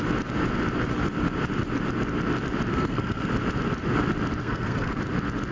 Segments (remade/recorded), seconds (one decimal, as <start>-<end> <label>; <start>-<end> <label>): 0.0-2.7 recorded; 2.7-3.3 remade; 3.3-4.4 recorded; 4.4-5.0 remade; 5.0-5.5 recorded